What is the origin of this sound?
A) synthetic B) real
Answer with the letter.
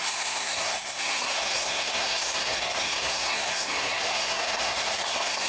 A